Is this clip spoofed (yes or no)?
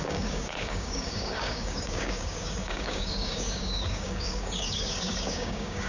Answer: yes